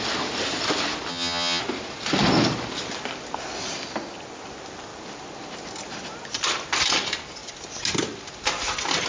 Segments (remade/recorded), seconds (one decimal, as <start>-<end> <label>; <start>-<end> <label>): 0.0-1.1 recorded; 1.1-1.6 remade; 1.6-9.1 recorded